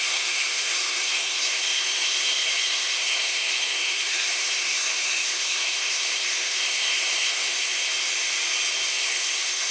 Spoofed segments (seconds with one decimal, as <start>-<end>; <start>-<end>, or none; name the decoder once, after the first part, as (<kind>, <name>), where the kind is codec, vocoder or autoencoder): 0.0-7.9 (codec, SNAC); 8.9-9.7